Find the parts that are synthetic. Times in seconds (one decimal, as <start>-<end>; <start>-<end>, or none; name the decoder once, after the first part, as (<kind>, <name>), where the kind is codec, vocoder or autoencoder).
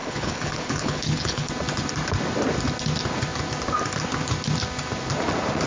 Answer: 0.0-1.5 (codec, HILCodec)